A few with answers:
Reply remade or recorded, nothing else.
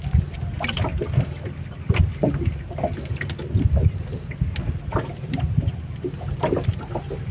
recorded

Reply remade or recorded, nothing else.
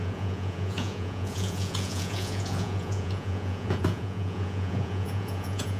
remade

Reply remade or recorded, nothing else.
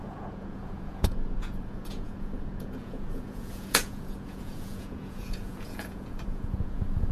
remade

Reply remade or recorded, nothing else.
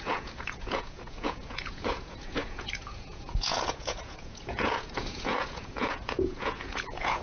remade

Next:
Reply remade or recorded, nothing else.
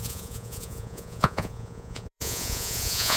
remade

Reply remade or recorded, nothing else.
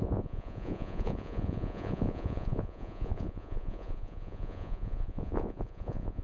remade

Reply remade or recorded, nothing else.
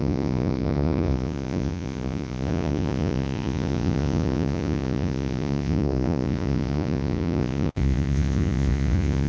remade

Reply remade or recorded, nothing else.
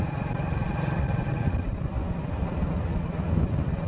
recorded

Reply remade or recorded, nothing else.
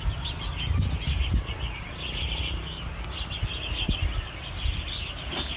recorded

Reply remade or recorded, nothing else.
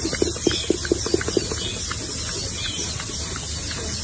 recorded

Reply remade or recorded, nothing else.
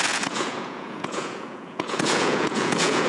remade